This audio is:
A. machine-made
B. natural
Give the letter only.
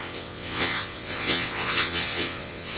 A